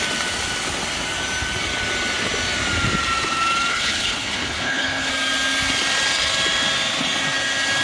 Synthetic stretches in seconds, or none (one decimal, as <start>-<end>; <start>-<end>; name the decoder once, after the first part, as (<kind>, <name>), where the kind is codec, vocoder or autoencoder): 3.7-5.1 (codec, HILCodec)